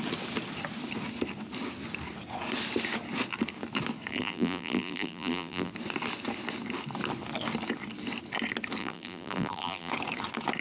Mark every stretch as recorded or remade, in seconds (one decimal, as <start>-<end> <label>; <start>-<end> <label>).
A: 0.0-4.1 recorded; 4.1-5.7 remade; 5.7-8.8 recorded; 8.8-9.9 remade; 9.9-10.6 recorded

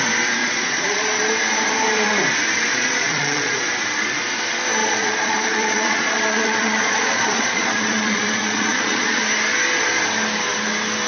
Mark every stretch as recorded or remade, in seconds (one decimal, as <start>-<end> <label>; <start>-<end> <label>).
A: 0.0-0.4 recorded; 0.4-1.3 remade; 1.3-2.7 recorded; 2.7-3.6 remade; 3.6-4.8 recorded; 4.8-9.2 remade; 9.2-11.1 recorded

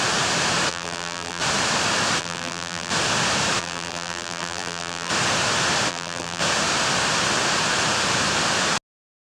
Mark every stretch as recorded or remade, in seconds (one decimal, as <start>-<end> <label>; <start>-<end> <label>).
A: 0.0-0.7 recorded; 0.7-1.4 remade; 1.4-2.2 recorded; 2.2-2.9 remade; 2.9-3.6 recorded; 3.6-5.1 remade; 5.1-5.9 recorded; 5.9-6.4 remade; 6.4-9.3 recorded

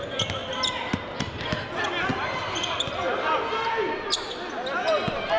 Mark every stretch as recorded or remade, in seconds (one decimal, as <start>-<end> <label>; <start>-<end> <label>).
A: 0.0-5.4 recorded

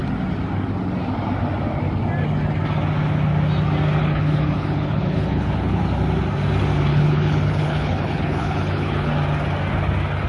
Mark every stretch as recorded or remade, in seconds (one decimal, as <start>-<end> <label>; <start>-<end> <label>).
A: 0.0-4.0 recorded; 4.0-5.8 remade; 5.8-6.9 recorded; 6.9-9.1 remade; 9.1-10.3 recorded

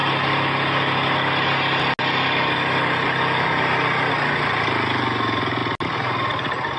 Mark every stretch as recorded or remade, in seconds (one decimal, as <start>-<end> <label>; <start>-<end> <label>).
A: 0.0-6.8 recorded

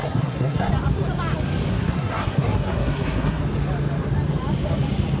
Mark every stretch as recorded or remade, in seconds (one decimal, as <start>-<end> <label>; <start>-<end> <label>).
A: 0.0-0.7 remade; 0.7-1.7 recorded; 1.7-3.4 remade; 3.4-5.2 recorded